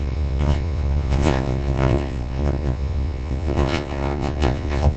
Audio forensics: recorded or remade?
remade